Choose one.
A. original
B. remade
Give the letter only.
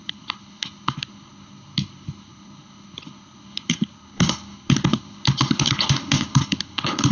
B